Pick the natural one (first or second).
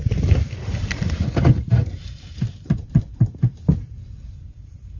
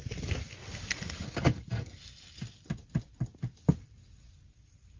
second